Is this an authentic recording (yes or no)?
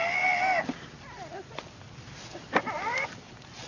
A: yes